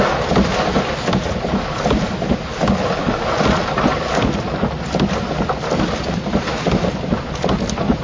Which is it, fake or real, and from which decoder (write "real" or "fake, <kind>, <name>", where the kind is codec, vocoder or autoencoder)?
real